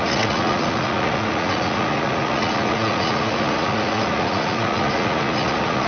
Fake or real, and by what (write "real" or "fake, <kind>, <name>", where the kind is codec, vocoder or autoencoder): fake, vocoder, Vocos